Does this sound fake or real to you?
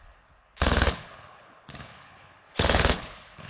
fake